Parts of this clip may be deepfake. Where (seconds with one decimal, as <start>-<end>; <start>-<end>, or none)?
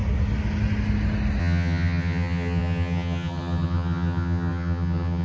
1.4-5.2